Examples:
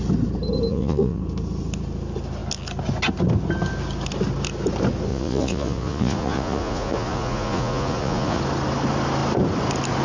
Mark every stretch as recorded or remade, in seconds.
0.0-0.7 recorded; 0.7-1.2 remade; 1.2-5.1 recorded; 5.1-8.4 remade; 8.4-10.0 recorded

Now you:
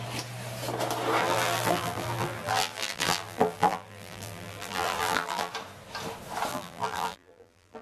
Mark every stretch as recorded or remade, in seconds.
0.0-1.2 recorded; 1.2-5.5 remade; 5.5-6.5 recorded; 6.5-7.8 remade

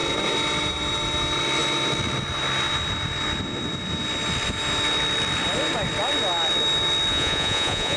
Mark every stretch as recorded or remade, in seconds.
0.0-7.1 recorded; 7.1-8.0 remade

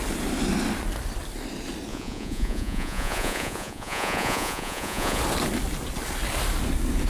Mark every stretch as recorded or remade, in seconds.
0.0-1.9 recorded; 1.9-5.2 remade; 5.2-7.1 recorded

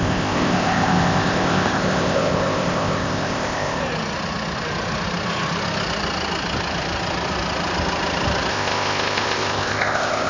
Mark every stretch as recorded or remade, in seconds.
0.0-3.8 remade; 3.8-8.5 recorded; 8.5-10.3 remade